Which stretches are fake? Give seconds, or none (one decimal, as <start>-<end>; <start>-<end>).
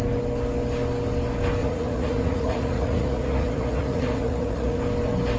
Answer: 1.6-4.8